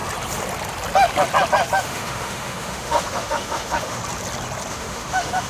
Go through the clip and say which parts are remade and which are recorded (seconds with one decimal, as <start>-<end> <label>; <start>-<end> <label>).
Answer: 0.0-1.8 recorded; 1.8-4.0 remade; 4.0-4.7 recorded; 4.7-5.5 remade